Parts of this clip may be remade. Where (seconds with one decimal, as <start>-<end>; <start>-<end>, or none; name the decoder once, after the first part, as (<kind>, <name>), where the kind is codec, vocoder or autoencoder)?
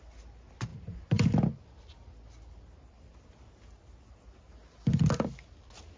none